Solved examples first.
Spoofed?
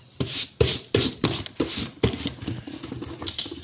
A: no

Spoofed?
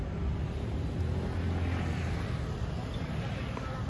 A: no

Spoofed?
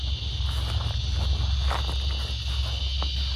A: no